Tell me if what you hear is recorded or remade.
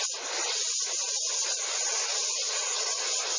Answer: recorded